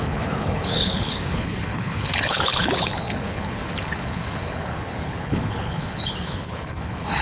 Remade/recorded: remade